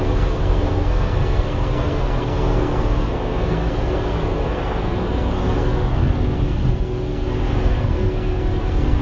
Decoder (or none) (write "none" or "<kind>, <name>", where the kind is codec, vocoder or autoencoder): codec, SNAC